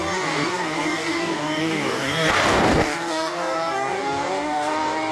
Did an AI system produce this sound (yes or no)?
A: yes